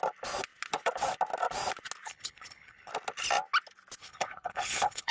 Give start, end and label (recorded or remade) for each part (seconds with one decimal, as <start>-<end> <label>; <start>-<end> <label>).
0.0-2.1 recorded; 2.1-2.9 remade; 2.9-4.0 recorded; 4.0-5.1 remade